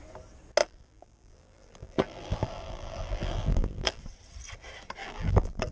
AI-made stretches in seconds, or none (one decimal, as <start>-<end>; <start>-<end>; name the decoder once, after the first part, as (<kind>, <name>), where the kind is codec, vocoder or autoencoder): 0.6-4.0 (vocoder, BigVGAN v2); 5.0-5.7